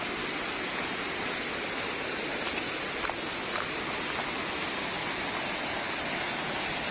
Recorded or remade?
recorded